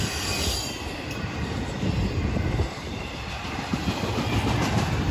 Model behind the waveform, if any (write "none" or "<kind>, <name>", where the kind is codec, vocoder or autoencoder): vocoder, BigVGAN v2